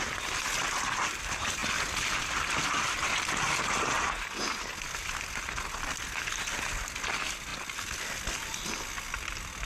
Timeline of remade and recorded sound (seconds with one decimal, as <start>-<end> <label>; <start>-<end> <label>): 0.0-9.7 recorded